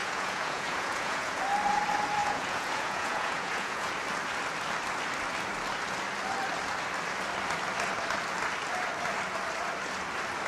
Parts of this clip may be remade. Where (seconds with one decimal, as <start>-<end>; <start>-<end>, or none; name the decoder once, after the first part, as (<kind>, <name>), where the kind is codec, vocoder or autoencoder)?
0.0-1.4 (vocoder, Vocos); 2.2-3.9